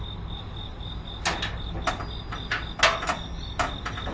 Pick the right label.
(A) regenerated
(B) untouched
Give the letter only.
B